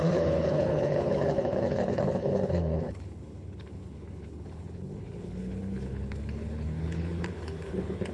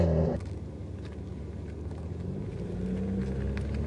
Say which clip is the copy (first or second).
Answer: first